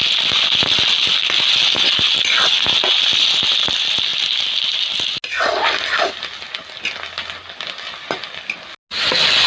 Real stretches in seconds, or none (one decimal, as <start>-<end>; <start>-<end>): 0.0-9.5